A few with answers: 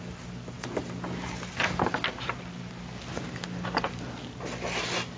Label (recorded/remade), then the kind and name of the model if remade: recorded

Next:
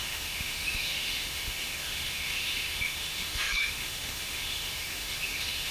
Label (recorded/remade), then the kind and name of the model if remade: remade, autoencoder, DAC-VAE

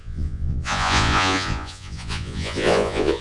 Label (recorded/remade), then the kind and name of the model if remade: remade, vocoder, Vocos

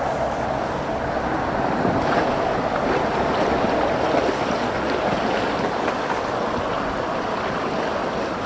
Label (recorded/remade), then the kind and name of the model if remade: recorded